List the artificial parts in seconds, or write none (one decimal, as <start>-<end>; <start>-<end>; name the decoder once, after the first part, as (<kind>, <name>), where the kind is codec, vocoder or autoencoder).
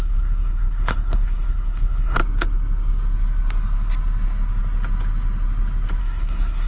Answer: 0.0-2.2 (codec, SNAC); 6.0-6.7